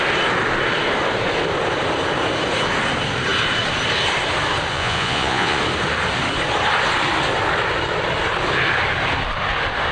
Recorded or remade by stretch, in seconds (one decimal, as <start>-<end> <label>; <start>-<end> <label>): 0.0-4.7 recorded; 4.7-5.6 remade; 5.6-9.9 recorded